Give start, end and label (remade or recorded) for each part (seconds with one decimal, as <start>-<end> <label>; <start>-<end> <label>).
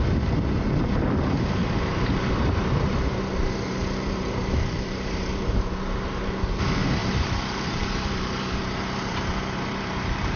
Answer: 0.0-1.6 recorded; 1.6-6.6 remade; 6.6-7.0 recorded; 7.0-10.4 remade